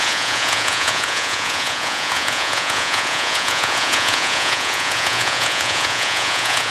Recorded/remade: remade